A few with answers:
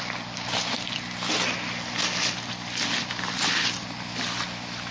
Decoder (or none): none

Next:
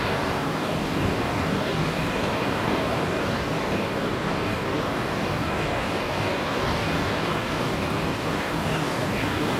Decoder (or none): codec, DAC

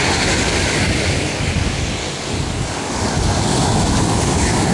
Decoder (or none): codec, DAC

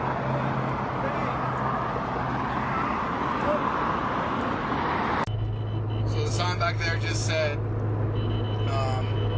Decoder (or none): none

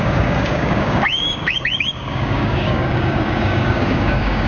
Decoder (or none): codec, DAC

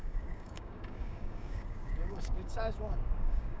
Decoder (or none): codec, DAC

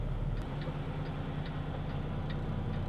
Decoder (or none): none